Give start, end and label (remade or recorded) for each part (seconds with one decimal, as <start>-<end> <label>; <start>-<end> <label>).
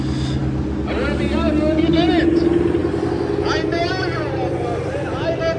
0.0-5.6 recorded